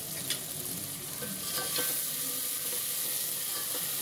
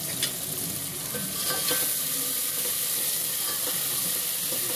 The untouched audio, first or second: first